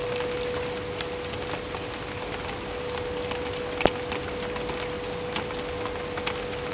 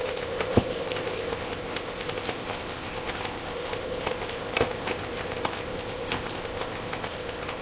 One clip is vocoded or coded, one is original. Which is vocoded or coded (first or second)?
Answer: second